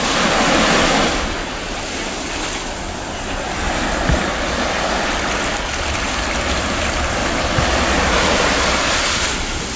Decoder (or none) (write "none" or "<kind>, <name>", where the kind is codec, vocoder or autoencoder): none